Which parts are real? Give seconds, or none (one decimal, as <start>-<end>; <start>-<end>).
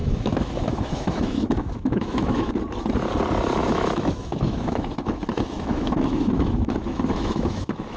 2.5-3.6